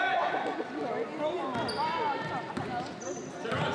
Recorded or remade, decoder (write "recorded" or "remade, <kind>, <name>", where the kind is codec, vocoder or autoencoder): recorded